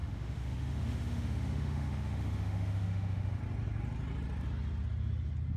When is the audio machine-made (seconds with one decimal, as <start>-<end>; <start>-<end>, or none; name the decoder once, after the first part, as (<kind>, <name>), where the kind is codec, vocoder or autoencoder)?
0.0-3.4 (autoencoder, DAC-VAE)